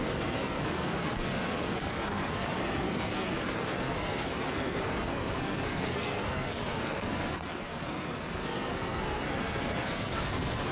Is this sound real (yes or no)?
no